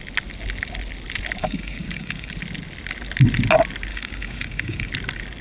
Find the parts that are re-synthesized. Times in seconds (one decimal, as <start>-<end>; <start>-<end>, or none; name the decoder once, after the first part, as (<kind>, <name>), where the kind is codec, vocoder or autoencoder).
1.4-2.3 (codec, DAC); 3.9-4.9